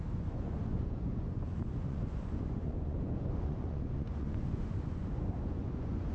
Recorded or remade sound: remade